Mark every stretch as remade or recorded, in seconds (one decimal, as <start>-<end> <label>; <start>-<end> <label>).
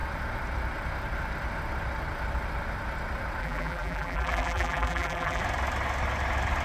0.0-3.4 recorded; 3.4-5.4 remade; 5.4-6.6 recorded